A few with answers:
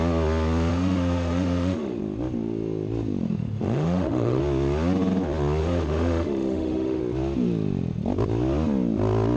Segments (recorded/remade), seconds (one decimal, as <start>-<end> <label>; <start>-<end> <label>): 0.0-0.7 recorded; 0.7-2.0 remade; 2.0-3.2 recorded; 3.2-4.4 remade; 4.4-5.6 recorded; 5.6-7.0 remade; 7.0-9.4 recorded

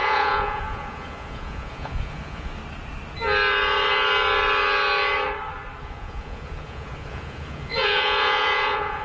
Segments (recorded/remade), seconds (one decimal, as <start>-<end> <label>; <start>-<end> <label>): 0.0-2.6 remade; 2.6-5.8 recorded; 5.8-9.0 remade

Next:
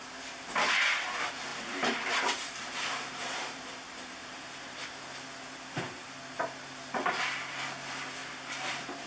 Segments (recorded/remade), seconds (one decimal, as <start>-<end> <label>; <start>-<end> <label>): 0.0-1.5 recorded; 1.5-5.0 remade; 5.0-8.2 recorded; 8.2-9.1 remade

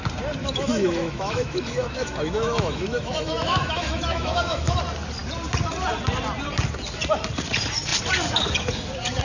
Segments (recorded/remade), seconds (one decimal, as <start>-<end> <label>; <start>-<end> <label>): 0.0-0.4 recorded; 0.4-4.8 remade; 4.8-9.2 recorded

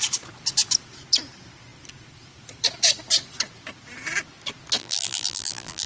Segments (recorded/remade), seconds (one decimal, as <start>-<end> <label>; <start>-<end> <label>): 0.0-4.8 recorded; 4.8-5.9 remade

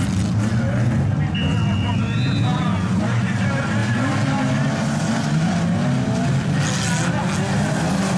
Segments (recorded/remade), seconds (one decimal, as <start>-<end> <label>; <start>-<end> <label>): 0.0-2.5 recorded; 2.5-3.2 remade; 3.2-8.2 recorded